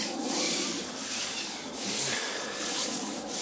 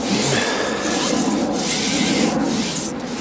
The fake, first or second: first